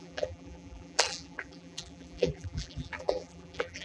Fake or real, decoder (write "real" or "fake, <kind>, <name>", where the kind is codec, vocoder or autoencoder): fake, vocoder, BigVGAN v2